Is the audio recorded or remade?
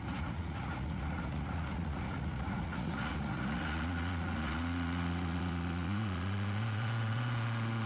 remade